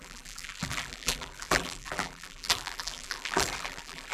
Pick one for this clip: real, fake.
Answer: fake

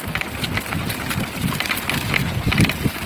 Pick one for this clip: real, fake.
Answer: real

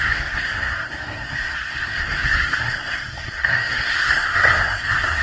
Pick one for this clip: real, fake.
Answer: fake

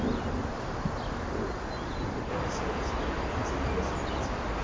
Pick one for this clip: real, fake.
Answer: real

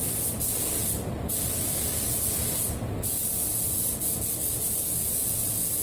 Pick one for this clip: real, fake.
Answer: real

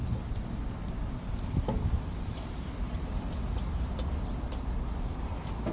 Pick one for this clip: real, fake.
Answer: real